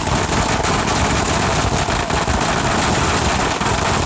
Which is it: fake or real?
real